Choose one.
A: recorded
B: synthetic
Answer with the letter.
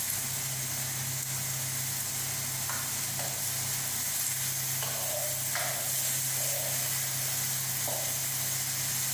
A